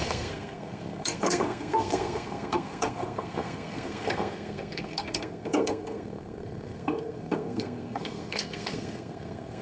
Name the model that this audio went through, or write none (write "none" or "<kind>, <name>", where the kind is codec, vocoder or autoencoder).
codec, SNAC